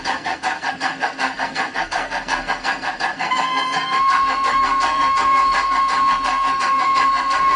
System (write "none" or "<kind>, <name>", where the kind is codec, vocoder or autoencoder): codec, SNAC